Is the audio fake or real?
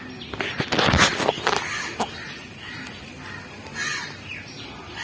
real